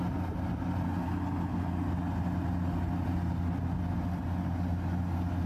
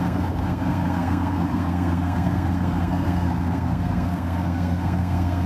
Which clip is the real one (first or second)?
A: first